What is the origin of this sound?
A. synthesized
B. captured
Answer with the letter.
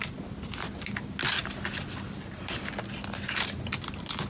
B